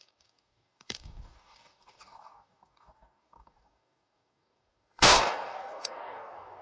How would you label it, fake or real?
fake